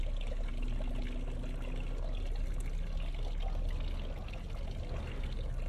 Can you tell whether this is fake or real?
real